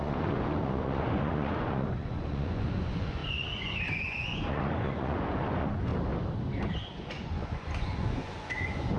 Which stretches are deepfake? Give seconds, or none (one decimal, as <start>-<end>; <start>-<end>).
0.0-5.9; 6.8-9.0